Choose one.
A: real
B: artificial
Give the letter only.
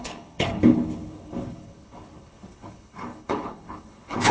B